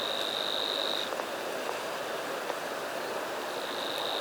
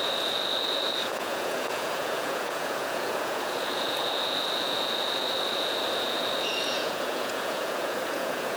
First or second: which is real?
first